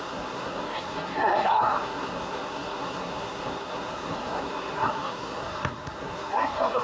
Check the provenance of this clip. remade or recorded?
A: remade